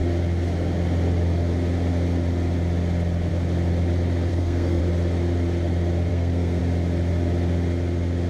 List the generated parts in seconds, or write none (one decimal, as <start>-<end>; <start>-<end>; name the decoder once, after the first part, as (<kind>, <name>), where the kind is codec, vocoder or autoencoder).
4.3-4.8 (codec, SNAC); 6.1-6.6